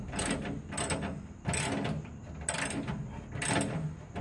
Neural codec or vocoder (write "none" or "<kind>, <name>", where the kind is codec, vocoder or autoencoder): none